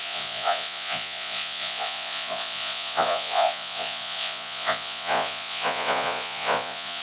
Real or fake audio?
fake